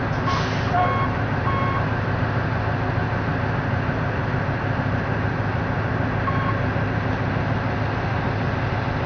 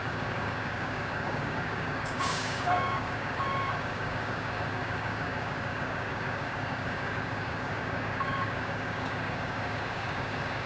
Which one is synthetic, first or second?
second